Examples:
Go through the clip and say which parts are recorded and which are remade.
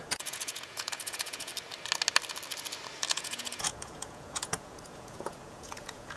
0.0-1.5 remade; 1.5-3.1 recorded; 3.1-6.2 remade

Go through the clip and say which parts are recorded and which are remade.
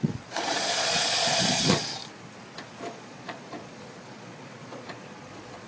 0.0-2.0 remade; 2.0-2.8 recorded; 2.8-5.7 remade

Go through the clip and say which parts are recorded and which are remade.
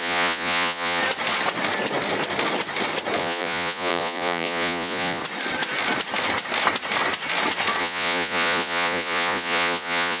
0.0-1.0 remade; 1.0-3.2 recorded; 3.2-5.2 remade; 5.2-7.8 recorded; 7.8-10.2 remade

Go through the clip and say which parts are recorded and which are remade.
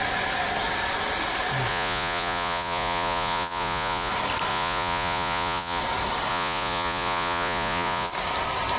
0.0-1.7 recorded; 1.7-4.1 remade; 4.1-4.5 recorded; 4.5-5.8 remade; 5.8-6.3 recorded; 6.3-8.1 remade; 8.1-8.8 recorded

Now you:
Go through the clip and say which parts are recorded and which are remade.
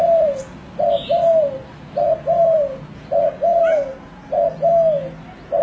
0.0-5.6 recorded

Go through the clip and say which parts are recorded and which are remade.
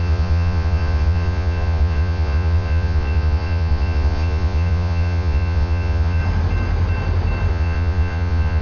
0.0-6.2 remade; 6.2-7.5 recorded; 7.5-8.6 remade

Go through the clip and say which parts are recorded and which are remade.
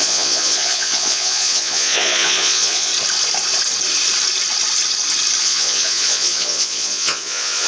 0.0-2.9 remade; 2.9-5.4 recorded; 5.4-7.7 remade